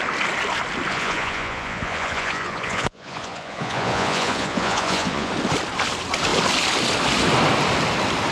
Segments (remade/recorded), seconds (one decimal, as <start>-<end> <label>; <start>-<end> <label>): 0.0-0.9 recorded; 0.9-5.3 remade; 5.3-8.3 recorded